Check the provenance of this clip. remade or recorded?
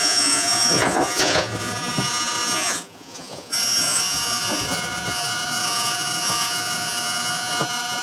remade